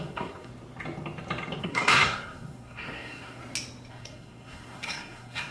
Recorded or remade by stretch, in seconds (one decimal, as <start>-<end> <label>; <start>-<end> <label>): 0.0-0.5 remade; 0.5-1.6 recorded; 1.6-3.4 remade; 3.4-3.9 recorded; 3.9-5.5 remade